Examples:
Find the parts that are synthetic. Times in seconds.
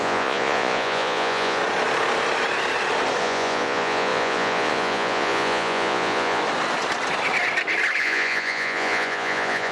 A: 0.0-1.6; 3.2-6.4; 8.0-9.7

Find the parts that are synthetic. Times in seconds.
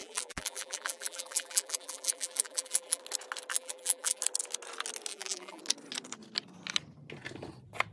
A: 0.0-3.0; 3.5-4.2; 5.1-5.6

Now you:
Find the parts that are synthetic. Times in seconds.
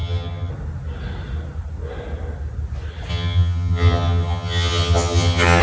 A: 0.0-0.5; 3.1-5.6